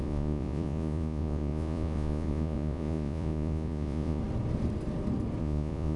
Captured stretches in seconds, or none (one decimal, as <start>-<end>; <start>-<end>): 4.2-5.4